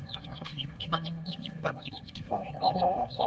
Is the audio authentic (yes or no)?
no